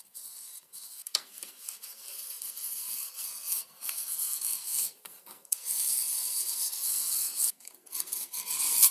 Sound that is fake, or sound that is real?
fake